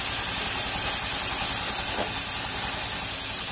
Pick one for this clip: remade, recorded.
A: recorded